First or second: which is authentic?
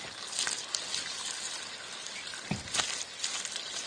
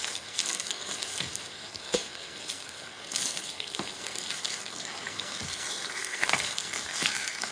first